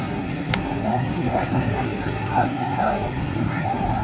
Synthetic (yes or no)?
yes